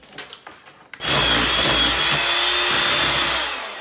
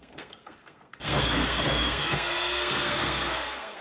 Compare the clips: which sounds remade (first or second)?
second